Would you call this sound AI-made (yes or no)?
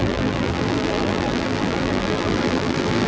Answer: yes